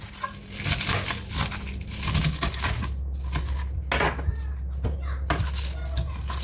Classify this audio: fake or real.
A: real